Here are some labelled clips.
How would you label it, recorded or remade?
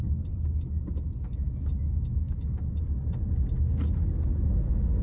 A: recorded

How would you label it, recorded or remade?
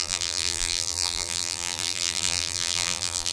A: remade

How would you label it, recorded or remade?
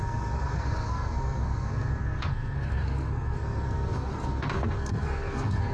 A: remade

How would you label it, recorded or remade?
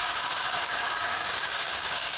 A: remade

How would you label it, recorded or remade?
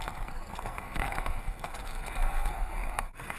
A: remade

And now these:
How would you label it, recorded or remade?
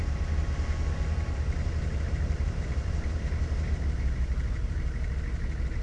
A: remade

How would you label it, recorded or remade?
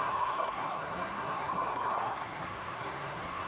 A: remade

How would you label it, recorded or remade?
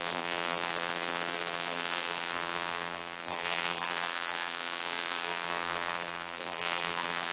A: remade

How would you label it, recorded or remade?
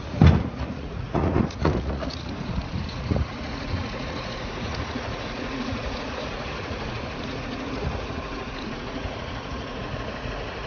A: remade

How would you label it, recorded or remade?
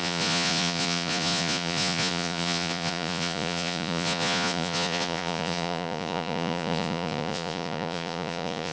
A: remade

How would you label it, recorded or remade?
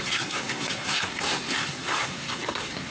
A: remade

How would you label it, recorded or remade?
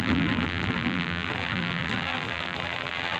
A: remade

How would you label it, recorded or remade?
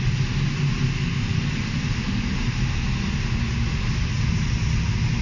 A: recorded